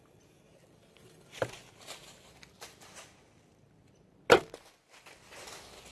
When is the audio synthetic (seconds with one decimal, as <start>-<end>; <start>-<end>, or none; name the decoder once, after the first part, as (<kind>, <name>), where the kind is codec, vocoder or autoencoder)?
none